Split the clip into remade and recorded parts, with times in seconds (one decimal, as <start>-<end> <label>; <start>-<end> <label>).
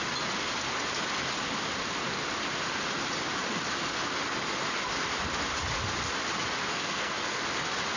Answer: 0.0-6.7 recorded; 6.7-7.4 remade; 7.4-8.0 recorded